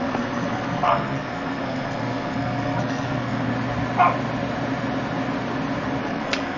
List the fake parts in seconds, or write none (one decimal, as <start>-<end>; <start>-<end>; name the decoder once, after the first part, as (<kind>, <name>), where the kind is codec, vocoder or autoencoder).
0.0-3.5 (codec, SNAC); 6.0-6.6